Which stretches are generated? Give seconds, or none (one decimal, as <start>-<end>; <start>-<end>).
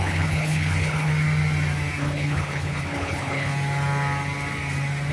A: 0.0-1.1; 2.0-3.5